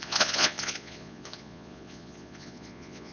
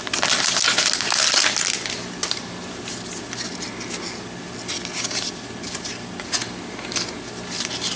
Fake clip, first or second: first